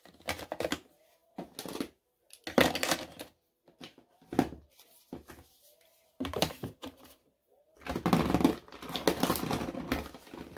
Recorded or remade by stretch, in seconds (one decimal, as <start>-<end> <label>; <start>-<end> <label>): 0.0-5.9 recorded; 5.9-7.8 remade; 7.8-10.6 recorded